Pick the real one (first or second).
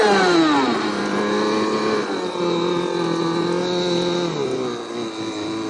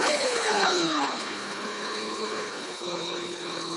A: first